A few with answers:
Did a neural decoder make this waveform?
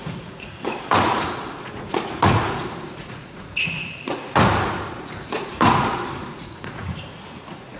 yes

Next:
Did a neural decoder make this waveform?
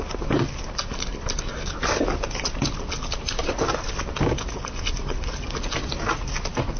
no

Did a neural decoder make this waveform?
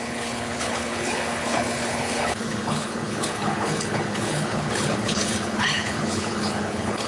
yes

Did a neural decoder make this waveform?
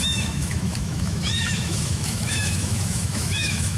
yes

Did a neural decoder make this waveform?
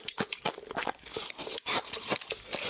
no